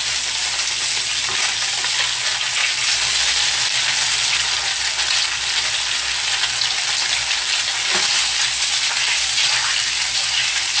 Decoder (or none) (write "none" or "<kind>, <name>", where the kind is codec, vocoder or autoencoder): none